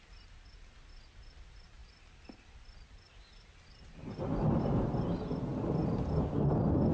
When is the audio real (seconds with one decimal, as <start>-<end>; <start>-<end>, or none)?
0.0-1.8; 4.6-6.9